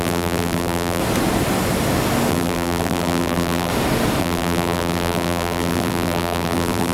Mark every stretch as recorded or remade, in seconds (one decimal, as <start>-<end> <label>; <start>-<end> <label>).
0.0-1.0 remade; 1.0-2.3 recorded; 2.3-3.7 remade; 3.7-4.2 recorded; 4.2-6.9 remade